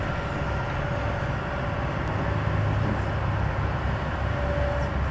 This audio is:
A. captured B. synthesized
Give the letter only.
A